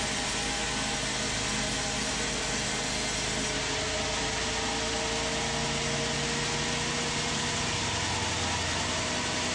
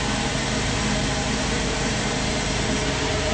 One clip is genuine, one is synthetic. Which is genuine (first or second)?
first